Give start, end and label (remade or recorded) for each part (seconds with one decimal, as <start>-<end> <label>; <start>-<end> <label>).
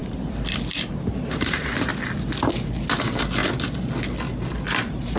0.0-1.1 recorded; 1.1-1.9 remade; 1.9-3.0 recorded; 3.0-3.4 remade; 3.4-5.2 recorded